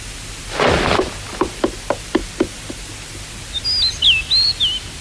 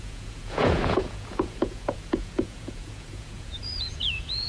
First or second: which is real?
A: first